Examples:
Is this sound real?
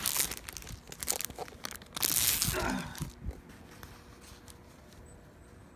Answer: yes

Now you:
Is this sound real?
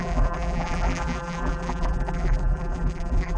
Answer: no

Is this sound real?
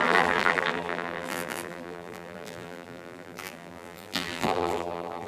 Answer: no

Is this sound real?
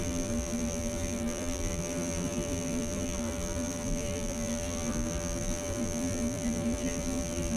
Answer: no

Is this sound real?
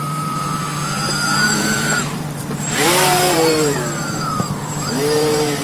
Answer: no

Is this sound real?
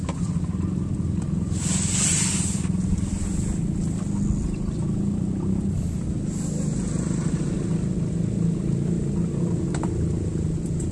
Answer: yes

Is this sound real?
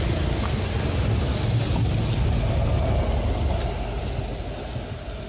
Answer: yes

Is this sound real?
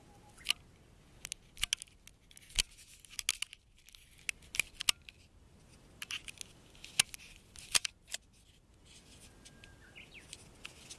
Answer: yes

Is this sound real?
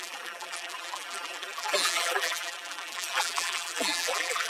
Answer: no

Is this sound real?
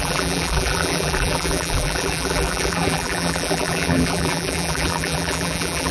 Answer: no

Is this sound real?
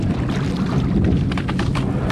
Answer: no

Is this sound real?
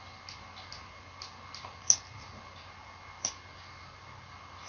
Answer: yes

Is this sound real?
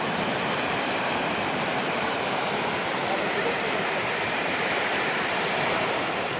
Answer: no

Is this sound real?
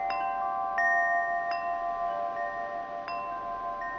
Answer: yes